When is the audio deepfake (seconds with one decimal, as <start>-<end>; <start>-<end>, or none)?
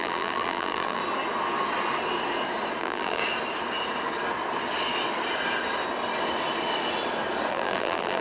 0.0-1.0; 2.8-3.2; 7.5-8.2